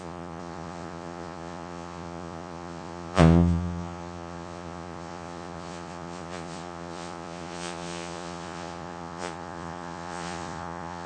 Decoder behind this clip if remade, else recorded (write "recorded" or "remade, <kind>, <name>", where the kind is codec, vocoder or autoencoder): remade, vocoder, Vocos